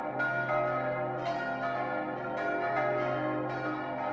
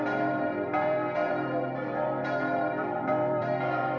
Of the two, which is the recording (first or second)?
first